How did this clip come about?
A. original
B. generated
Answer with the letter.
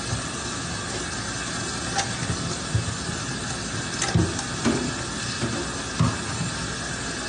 A